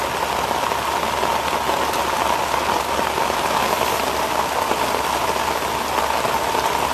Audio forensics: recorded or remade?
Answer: recorded